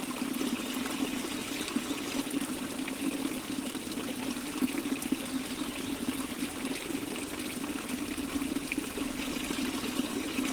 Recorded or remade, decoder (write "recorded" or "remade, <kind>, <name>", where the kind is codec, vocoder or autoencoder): remade, vocoder, BigVGAN v2